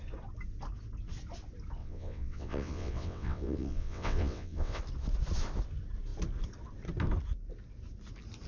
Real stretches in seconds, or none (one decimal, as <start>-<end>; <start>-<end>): 0.0-1.8; 4.8-8.5